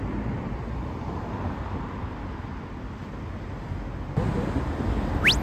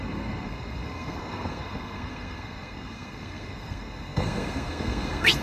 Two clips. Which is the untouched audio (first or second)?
first